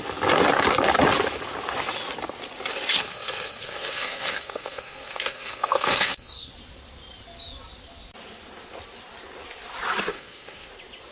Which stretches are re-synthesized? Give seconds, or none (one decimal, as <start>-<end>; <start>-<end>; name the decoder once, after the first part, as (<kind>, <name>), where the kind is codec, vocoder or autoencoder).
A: 2.9-6.5 (codec, SNAC); 10.1-10.7